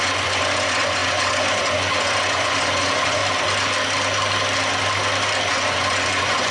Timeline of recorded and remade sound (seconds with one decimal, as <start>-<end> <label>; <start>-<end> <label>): 0.0-3.2 remade; 3.2-5.5 recorded; 5.5-6.5 remade